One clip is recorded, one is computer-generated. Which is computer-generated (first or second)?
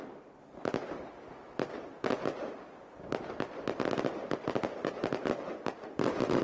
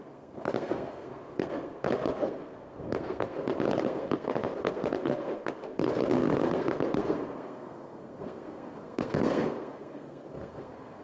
second